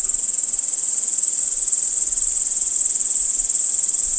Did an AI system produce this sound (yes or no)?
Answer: no